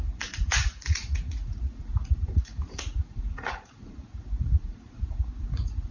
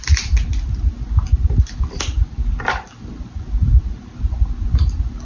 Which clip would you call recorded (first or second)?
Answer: second